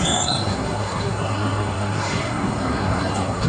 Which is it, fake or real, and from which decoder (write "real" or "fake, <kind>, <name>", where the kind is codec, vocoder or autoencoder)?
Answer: fake, codec, SNAC